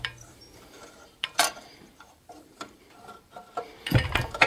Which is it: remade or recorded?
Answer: remade